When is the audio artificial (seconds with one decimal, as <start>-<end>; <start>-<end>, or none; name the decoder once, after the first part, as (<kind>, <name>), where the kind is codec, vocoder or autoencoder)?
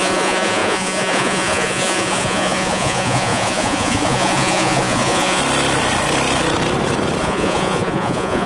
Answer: 0.0-5.4 (vocoder, Vocos); 7.2-8.5